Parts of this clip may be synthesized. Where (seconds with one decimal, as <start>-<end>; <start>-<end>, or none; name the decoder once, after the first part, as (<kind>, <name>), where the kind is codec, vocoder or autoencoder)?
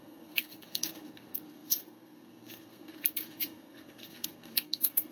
0.0-5.1 (codec, SNAC)